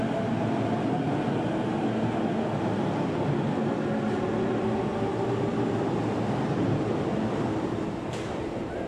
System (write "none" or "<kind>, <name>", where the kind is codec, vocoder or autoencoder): none